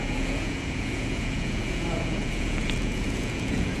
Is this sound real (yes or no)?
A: no